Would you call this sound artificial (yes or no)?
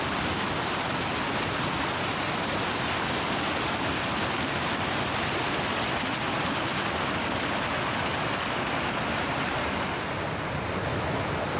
no